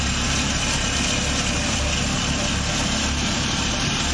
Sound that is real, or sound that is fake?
real